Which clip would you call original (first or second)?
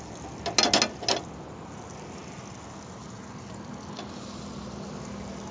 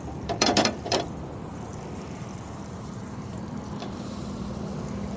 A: first